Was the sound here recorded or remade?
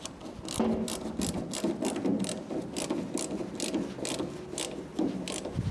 recorded